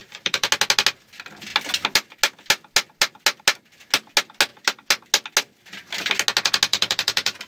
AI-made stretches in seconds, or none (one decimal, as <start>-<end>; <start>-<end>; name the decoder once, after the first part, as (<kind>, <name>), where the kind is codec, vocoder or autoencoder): 0.0-0.5 (vocoder, BigVGAN v2); 6.7-7.5